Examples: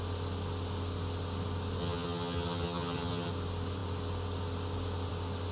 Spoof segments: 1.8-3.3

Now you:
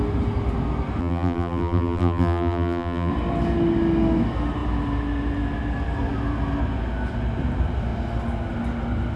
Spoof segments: 1.0-3.1